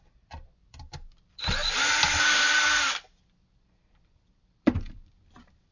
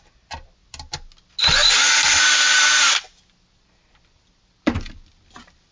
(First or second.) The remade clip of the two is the first